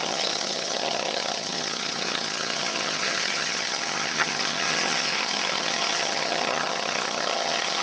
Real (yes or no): no